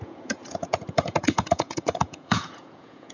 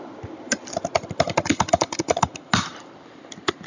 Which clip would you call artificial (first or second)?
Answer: first